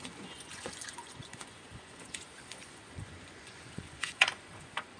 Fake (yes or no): yes